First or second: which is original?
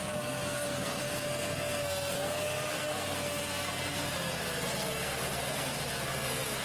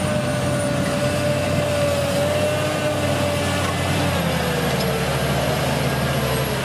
second